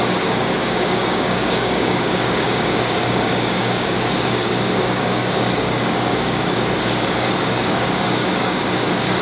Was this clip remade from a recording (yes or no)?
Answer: yes